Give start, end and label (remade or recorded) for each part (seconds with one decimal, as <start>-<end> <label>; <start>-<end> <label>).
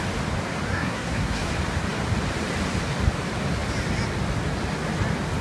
0.0-0.7 recorded; 0.7-1.5 remade; 1.5-5.4 recorded